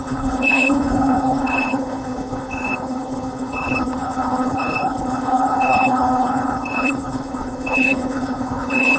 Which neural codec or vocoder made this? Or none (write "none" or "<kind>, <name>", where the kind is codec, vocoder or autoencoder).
codec, HILCodec